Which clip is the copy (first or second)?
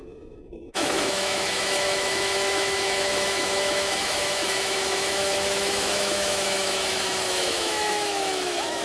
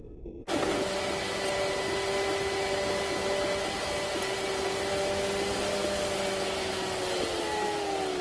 first